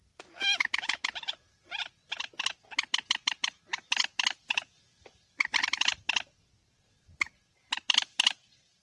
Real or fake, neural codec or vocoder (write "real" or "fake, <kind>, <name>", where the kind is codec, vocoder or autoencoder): real